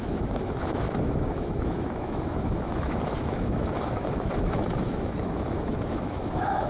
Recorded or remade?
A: remade